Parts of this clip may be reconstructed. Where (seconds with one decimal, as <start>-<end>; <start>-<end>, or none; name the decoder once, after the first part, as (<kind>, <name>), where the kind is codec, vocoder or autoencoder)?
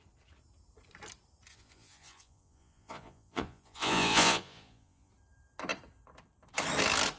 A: 1.5-5.1 (vocoder, Vocos)